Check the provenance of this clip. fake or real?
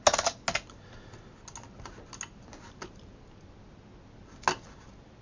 real